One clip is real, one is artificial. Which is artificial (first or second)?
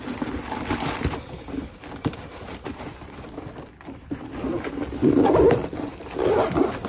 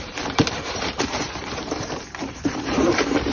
second